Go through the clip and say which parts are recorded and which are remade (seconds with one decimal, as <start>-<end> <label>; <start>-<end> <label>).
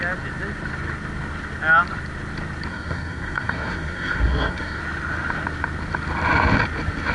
0.0-2.7 recorded; 2.7-4.8 remade; 4.8-7.1 recorded